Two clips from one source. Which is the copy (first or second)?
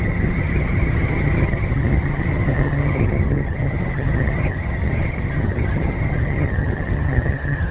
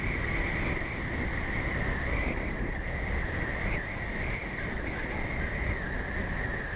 first